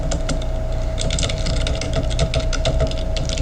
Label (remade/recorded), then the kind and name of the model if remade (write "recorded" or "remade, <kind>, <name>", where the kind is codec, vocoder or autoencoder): recorded